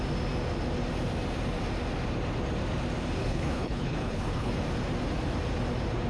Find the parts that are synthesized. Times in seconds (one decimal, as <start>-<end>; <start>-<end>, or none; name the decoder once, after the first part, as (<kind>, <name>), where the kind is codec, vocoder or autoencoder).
3.2-4.5 (codec, HILCodec)